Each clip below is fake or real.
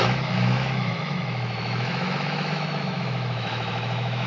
fake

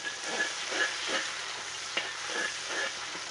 real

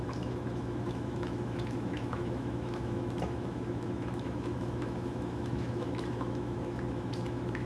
fake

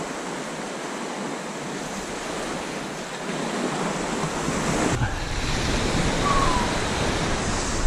real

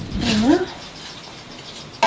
real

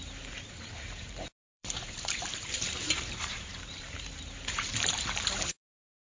fake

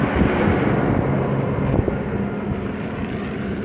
real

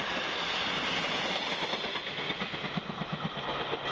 real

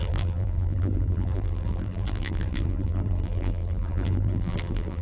fake